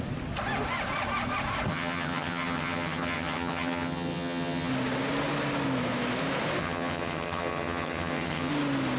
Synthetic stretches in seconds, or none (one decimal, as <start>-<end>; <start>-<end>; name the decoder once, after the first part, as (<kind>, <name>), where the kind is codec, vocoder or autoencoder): 1.7-4.7 (vocoder, HiFi-GAN); 6.6-8.5